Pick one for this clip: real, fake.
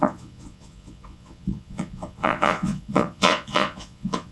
fake